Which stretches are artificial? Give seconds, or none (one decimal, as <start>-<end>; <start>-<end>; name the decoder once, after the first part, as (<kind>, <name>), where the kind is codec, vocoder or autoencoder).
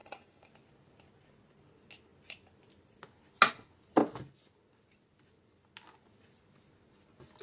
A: 0.0-0.5 (codec, DAC)